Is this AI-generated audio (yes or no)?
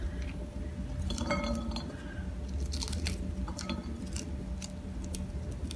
no